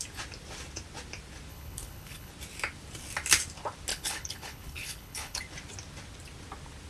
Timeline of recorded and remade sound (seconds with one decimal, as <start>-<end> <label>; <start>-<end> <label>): 0.0-1.5 recorded; 1.5-2.3 remade; 2.3-3.9 recorded; 3.9-5.4 remade; 5.4-6.9 recorded